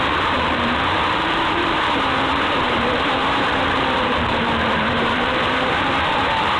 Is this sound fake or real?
fake